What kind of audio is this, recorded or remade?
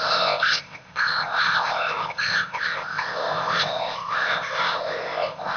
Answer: remade